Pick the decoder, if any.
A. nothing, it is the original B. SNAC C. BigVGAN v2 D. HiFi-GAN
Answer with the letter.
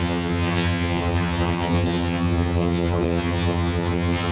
D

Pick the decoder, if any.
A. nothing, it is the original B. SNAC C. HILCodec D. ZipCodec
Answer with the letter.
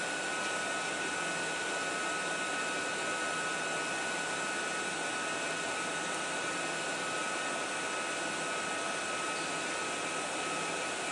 A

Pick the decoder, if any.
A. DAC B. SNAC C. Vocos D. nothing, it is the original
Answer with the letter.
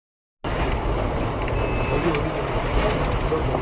D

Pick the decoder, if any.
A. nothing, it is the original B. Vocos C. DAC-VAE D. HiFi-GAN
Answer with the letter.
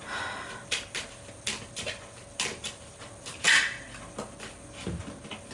A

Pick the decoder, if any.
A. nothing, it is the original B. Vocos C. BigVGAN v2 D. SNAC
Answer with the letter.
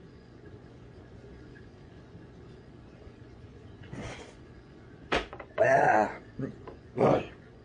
B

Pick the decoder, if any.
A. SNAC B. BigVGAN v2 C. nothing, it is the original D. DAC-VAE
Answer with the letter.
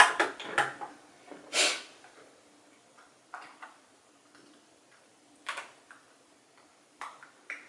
C